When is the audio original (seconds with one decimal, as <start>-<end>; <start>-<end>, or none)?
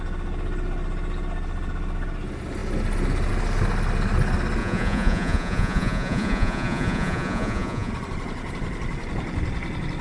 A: 0.0-4.6; 7.9-10.0